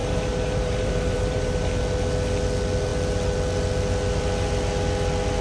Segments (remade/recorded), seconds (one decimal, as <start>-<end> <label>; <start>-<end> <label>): 0.0-1.8 remade; 1.8-5.4 recorded